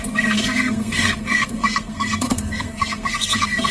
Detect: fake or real fake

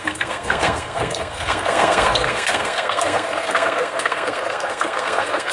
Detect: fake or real fake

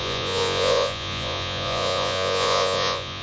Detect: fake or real fake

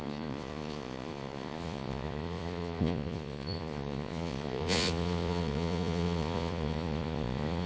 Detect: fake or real fake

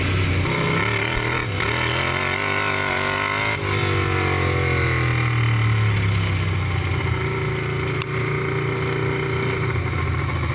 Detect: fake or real real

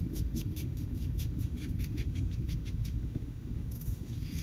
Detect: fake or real fake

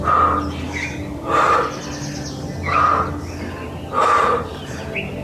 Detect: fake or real real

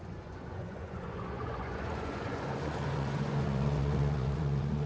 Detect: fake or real fake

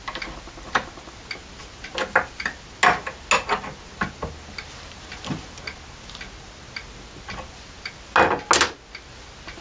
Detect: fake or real real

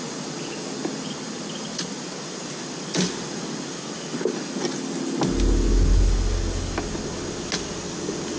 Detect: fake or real real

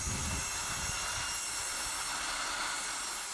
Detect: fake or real real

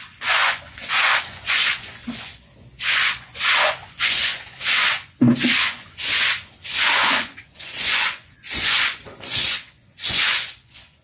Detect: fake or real fake